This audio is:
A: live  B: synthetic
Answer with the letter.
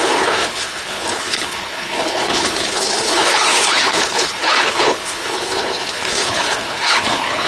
B